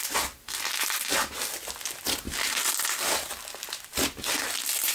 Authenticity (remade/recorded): recorded